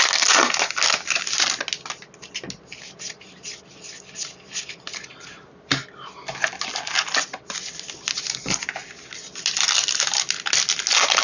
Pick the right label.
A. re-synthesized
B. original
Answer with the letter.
B